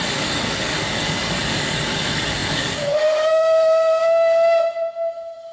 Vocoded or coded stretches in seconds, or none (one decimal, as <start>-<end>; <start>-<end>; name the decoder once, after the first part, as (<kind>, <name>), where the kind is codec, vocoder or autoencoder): 0.0-5.5 (codec, DAC)